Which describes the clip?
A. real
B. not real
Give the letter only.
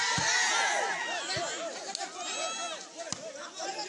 A